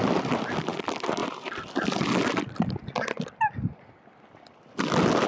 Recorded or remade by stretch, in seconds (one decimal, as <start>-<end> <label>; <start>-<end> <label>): 0.0-5.3 recorded